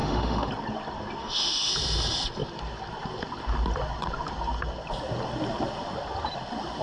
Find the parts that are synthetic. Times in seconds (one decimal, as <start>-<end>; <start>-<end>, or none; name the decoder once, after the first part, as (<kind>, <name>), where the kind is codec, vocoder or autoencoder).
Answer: 0.0-0.5 (autoencoder, DAC-VAE); 1.2-1.7